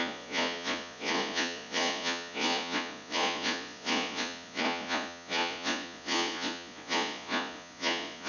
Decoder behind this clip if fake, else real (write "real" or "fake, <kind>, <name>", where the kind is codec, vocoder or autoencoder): fake, vocoder, Vocos